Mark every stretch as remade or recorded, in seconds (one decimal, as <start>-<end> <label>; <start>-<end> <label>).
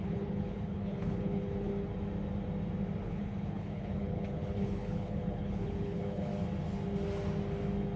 0.0-1.7 remade; 1.7-3.0 recorded; 3.0-6.3 remade; 6.3-8.0 recorded